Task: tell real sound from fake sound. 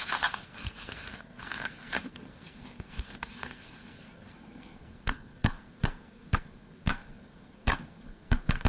fake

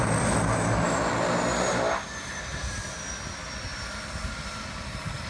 real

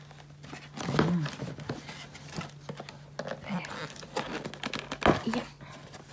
real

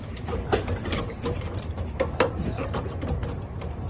fake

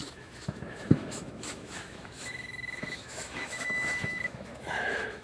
fake